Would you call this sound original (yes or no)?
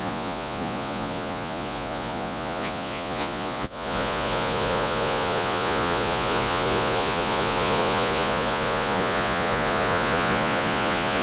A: no